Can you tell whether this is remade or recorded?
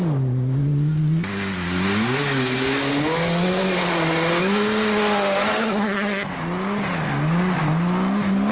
recorded